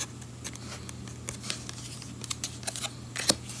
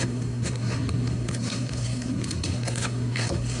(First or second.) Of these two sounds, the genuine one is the first